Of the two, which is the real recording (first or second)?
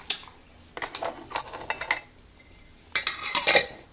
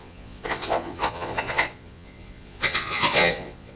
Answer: first